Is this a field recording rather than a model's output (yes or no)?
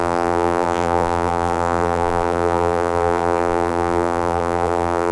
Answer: no